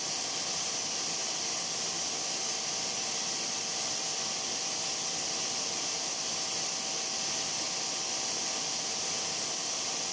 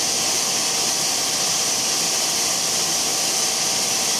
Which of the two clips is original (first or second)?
first